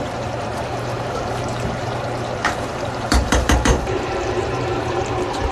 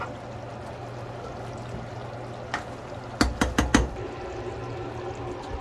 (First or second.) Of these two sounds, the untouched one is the second